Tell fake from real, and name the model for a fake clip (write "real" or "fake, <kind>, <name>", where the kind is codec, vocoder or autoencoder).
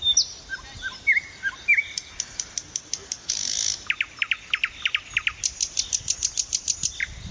real